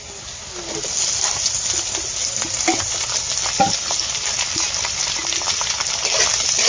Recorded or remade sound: recorded